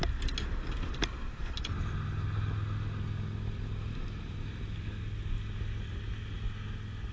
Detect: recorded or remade recorded